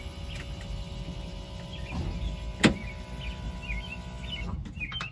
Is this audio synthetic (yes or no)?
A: no